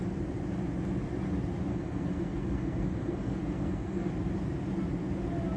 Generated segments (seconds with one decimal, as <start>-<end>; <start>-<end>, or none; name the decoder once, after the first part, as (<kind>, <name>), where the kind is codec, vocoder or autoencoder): 1.7-4.1 (codec, SNAC)